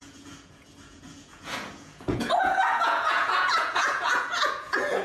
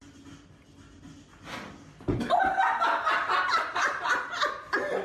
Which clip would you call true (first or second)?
second